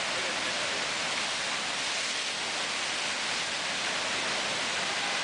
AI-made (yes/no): no